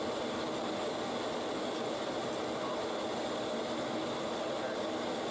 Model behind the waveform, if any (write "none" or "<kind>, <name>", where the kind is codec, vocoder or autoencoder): none